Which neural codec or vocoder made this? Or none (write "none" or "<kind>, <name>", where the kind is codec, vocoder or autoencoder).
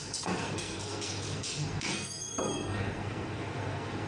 codec, SNAC